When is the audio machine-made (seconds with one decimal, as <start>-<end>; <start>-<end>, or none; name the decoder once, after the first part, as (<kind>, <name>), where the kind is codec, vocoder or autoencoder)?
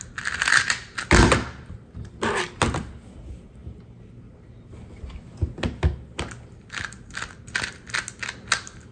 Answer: none